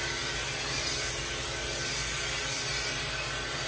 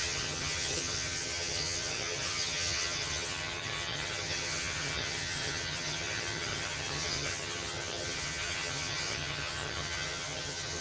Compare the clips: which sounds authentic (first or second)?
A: first